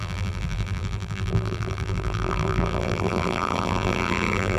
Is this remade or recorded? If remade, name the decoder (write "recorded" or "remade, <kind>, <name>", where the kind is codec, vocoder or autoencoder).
remade, vocoder, BigVGAN v2